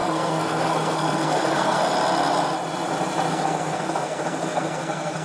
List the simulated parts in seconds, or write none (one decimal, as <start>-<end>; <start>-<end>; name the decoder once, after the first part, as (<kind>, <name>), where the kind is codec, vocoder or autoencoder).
0.0-1.8 (codec, SNAC); 3.3-5.2